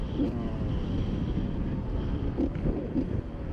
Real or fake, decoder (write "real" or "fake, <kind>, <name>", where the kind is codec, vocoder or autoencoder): fake, vocoder, BigVGAN v2